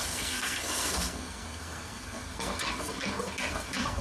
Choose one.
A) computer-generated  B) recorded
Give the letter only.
A